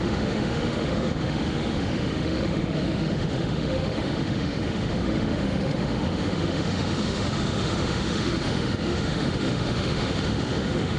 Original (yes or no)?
no